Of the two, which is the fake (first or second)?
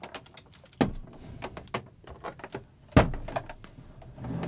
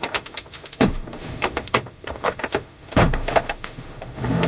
second